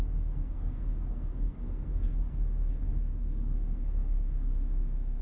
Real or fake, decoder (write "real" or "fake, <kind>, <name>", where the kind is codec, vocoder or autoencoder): fake, codec, SNAC